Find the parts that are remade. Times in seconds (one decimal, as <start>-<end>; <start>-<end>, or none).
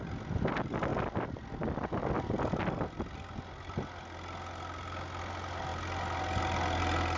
none